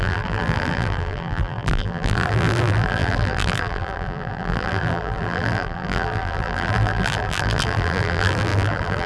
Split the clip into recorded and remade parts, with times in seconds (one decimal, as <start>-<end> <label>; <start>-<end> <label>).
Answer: 0.0-9.1 remade